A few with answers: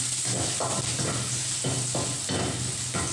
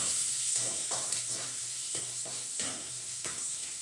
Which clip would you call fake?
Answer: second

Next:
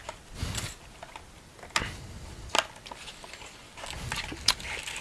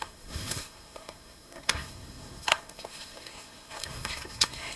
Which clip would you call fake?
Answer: second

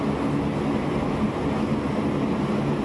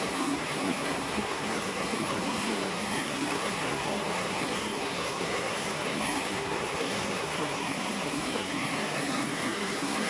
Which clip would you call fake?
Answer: second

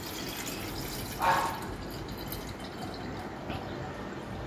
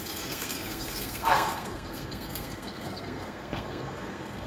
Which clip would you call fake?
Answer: second